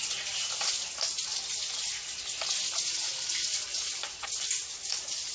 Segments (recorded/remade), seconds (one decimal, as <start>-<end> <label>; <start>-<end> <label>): 0.0-3.1 recorded; 3.1-5.3 remade